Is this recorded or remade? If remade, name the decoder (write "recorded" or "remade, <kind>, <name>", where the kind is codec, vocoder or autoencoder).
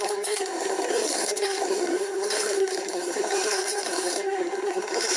remade, codec, SNAC